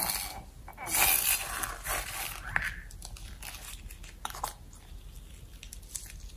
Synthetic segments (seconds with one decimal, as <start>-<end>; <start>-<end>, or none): none